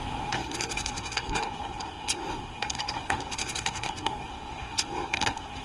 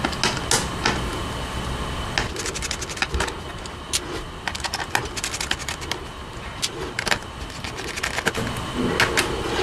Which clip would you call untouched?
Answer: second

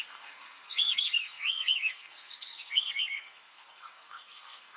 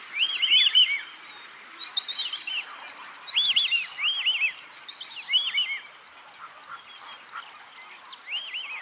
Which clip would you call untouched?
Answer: second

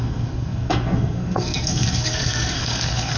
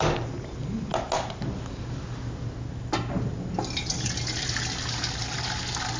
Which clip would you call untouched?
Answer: second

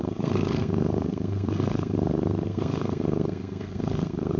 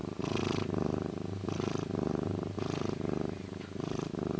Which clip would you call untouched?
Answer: second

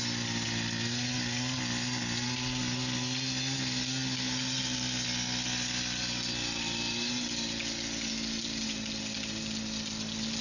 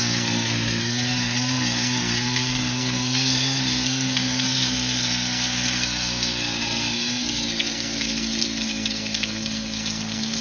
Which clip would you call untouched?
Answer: first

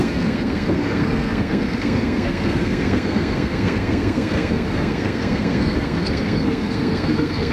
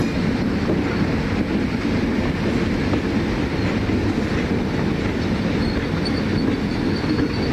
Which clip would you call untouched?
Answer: second